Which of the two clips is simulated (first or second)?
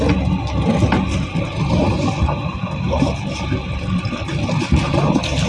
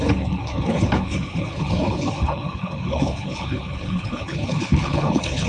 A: second